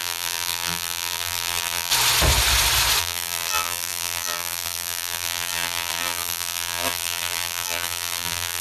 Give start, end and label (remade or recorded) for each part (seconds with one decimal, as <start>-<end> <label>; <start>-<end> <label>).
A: 0.0-1.9 remade; 1.9-3.0 recorded; 3.0-8.6 remade